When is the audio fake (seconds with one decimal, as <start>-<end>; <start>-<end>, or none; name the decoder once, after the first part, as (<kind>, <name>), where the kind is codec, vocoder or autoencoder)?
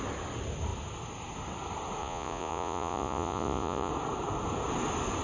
2.0-3.9 (vocoder, Vocos)